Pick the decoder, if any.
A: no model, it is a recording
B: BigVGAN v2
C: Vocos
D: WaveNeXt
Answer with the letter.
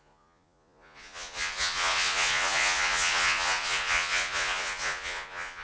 C